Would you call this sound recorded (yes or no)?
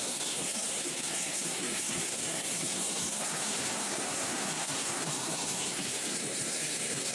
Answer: no